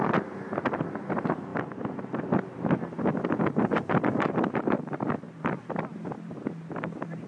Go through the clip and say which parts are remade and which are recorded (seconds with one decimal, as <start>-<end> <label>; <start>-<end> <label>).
0.0-3.7 recorded; 3.7-5.6 remade; 5.6-7.3 recorded